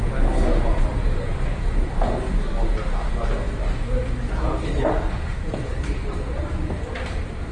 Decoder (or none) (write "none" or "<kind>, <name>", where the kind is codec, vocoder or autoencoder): none